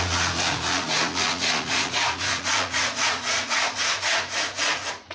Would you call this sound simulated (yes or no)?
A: yes